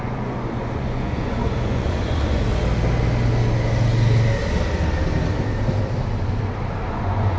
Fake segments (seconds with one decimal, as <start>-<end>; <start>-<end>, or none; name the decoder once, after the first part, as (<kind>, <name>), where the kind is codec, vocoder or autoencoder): 0.0-2.5 (vocoder, Vocos); 6.9-7.4